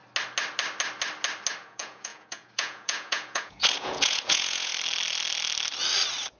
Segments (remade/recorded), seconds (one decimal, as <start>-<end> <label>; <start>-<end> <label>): 0.0-1.6 recorded; 1.6-4.7 remade; 4.7-6.4 recorded